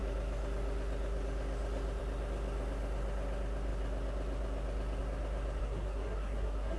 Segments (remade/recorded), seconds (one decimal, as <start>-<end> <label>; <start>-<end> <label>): 0.0-5.6 recorded; 5.6-6.8 remade